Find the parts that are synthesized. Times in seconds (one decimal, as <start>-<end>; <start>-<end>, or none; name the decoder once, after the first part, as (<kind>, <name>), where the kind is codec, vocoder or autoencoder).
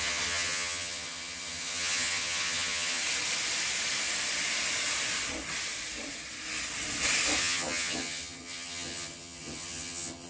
0.0-3.0 (vocoder, HiFi-GAN); 7.4-10.3